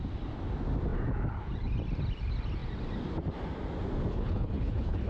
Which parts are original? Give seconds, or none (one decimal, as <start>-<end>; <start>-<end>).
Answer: 0.0-4.1